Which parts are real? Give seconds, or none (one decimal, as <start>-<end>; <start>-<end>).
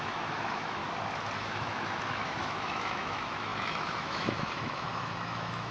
0.8-1.4